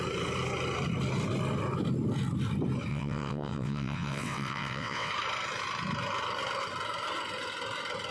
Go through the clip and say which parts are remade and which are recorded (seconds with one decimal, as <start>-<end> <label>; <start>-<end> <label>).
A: 0.0-2.9 recorded; 2.9-5.1 remade; 5.1-8.1 recorded